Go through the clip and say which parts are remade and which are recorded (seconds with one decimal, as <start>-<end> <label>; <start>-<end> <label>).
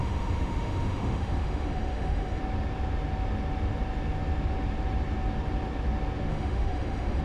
0.0-2.4 remade; 2.4-6.3 recorded; 6.3-7.2 remade